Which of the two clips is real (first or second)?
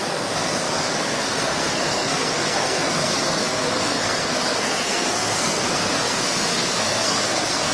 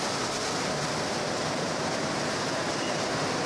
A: second